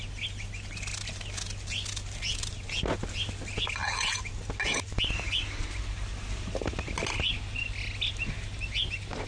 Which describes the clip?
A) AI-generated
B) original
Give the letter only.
B